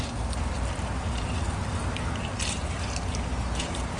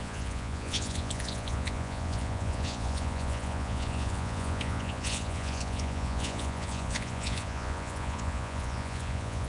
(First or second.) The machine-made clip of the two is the second